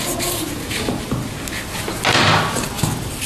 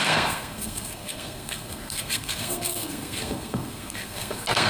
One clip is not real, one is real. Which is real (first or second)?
first